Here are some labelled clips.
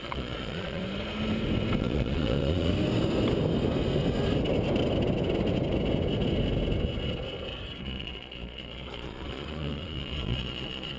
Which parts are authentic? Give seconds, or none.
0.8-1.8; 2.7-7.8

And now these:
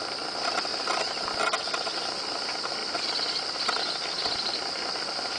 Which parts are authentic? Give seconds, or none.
0.0-5.4

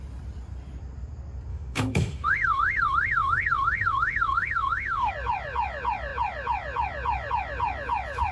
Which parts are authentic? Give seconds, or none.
0.0-1.5; 5.1-8.3

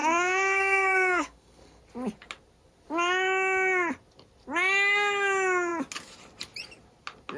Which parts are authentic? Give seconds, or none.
1.8-7.4

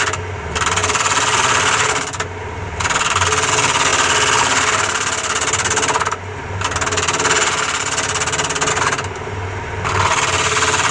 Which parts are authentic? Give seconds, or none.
0.0-0.8; 3.5-10.9